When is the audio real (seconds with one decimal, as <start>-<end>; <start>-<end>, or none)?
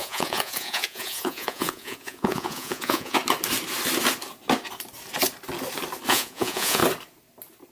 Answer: 3.2-6.1; 6.8-7.7